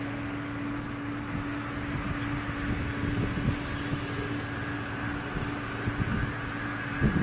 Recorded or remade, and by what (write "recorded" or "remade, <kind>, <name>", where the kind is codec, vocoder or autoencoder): recorded